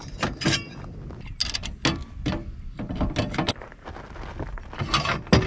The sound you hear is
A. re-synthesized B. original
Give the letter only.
B